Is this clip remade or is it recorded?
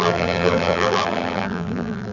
remade